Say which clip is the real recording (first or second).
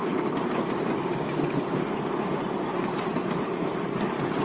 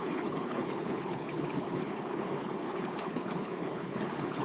first